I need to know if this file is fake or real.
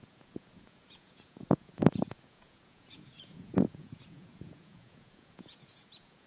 fake